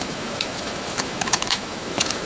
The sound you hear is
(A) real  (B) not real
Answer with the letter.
B